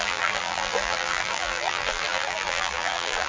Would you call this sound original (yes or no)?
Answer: no